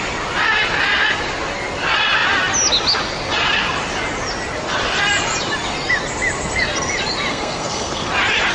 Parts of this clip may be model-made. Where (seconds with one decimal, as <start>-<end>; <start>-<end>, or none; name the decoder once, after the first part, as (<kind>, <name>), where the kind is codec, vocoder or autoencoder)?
7.3-8.1 (codec, SNAC)